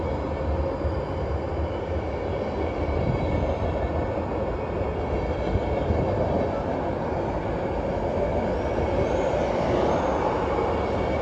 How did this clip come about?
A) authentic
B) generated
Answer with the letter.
A